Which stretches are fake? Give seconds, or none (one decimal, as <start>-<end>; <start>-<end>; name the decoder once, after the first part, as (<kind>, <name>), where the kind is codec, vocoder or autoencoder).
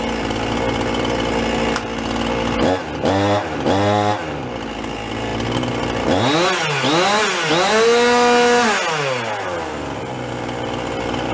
none